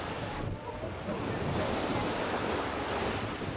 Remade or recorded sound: recorded